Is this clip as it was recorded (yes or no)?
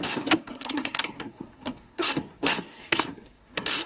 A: no